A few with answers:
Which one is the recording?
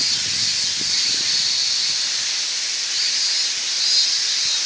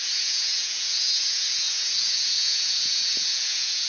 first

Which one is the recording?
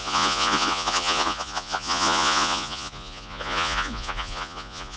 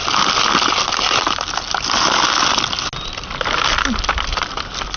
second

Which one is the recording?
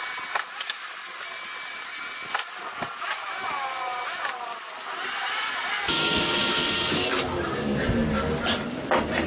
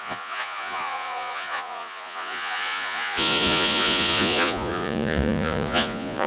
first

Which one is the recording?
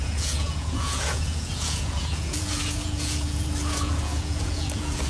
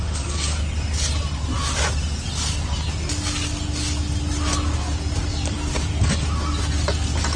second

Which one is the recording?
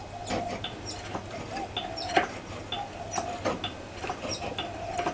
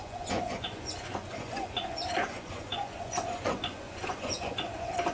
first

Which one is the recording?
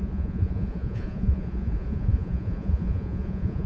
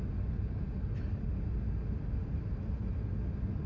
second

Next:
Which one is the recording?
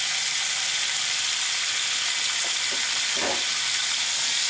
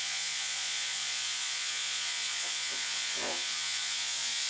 first